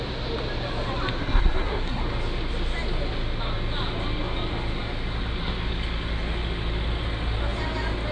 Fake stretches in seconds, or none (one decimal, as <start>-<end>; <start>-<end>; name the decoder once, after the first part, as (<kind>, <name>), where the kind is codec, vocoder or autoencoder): 1.2-2.0 (codec, SNAC)